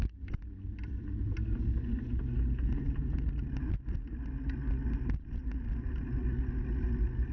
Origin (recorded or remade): recorded